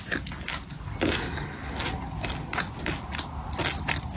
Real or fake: real